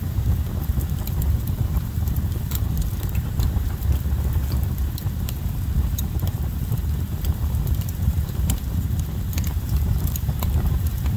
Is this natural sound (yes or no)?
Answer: no